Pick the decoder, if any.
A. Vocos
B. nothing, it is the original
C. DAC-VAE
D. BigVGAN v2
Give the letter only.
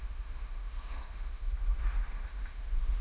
C